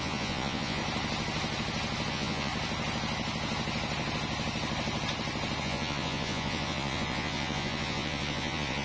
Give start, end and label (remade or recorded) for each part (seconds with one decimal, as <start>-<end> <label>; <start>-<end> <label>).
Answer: 0.0-0.8 remade; 0.8-2.1 recorded; 2.1-2.5 remade; 2.5-5.6 recorded; 5.6-8.8 remade